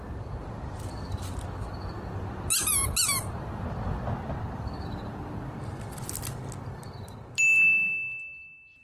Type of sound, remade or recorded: recorded